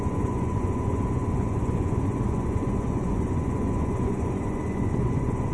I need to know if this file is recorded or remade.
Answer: remade